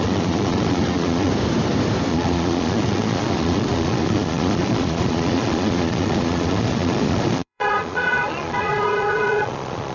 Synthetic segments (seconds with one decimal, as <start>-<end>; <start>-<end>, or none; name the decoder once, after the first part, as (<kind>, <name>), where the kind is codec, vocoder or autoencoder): 0.0-1.3 (vocoder, Vocos); 2.1-9.9